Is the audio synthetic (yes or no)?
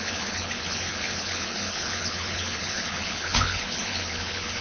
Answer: yes